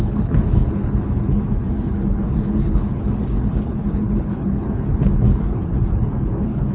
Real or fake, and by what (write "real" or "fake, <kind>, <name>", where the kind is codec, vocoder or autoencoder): fake, codec, HILCodec